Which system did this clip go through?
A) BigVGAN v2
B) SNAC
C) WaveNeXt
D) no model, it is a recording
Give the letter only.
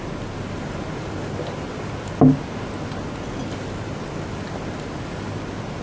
D